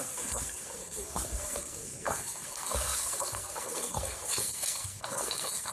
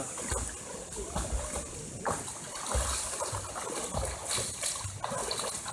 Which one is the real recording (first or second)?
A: second